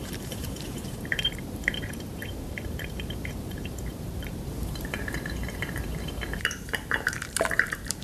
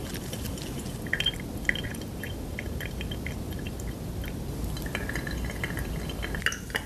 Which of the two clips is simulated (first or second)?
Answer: first